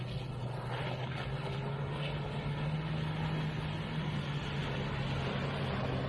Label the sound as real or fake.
real